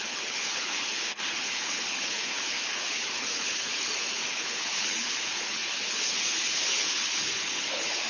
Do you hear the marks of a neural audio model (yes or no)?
yes